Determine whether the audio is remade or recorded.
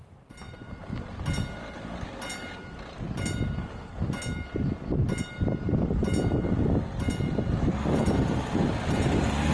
recorded